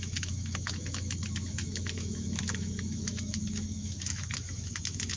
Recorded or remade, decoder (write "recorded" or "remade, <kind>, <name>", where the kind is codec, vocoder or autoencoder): remade, autoencoder, DAC-VAE